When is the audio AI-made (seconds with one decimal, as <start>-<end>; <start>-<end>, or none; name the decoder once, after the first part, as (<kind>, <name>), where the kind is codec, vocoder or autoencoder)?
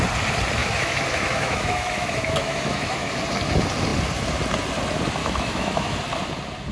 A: 0.6-3.2 (autoencoder, DAC-VAE); 5.2-6.0